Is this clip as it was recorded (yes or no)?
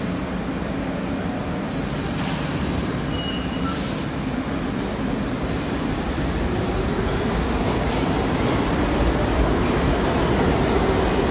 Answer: yes